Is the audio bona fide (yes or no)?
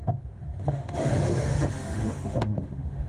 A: no